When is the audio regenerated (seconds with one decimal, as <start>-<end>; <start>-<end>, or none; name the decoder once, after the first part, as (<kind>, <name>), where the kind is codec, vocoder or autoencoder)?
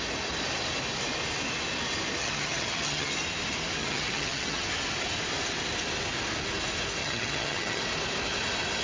2.2-3.1 (vocoder, HiFi-GAN); 3.8-4.6; 7.0-7.8